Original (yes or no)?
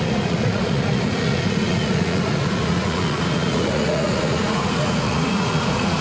no